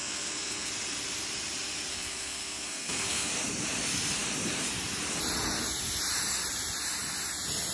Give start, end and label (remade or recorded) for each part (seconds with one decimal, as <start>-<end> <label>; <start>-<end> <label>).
0.0-0.7 remade; 0.7-1.9 recorded; 1.9-3.3 remade; 3.3-7.7 recorded